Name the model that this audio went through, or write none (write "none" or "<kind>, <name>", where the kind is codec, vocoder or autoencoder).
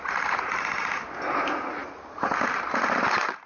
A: none